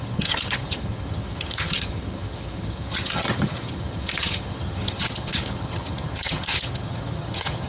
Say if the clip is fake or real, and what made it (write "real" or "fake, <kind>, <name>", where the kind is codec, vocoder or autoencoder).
fake, vocoder, HiFi-GAN